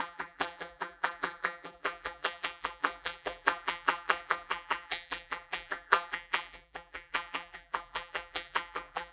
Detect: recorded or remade remade